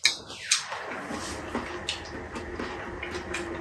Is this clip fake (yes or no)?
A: no